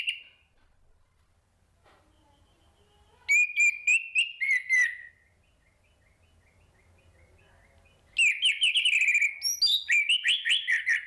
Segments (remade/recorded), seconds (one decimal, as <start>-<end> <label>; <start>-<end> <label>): 0.0-11.1 recorded